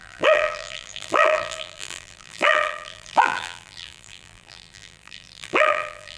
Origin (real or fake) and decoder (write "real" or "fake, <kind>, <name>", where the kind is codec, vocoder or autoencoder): fake, vocoder, BigVGAN v2